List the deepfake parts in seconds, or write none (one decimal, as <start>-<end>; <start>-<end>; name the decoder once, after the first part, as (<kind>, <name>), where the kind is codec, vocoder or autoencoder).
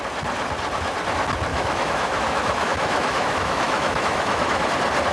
1.5-4.6 (autoencoder, DAC-VAE)